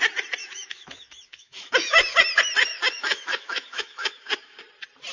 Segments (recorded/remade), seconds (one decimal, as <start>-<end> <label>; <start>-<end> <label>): 0.0-0.4 recorded; 0.4-2.2 remade; 2.2-2.7 recorded; 2.7-4.6 remade; 4.6-5.1 recorded